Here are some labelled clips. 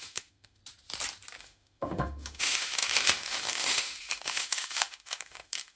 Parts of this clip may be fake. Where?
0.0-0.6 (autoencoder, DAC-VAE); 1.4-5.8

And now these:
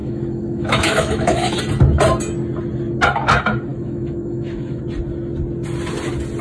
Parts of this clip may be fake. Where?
0.0-1.6 (autoencoder, DAC-VAE); 3.7-4.8

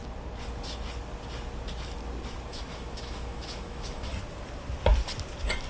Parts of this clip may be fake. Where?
2.5-4.1 (autoencoder, DAC-VAE)

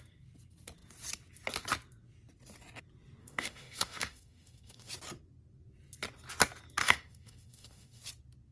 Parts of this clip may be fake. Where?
3.2-4.9 (autoencoder, DAC-VAE); 6.8-8.0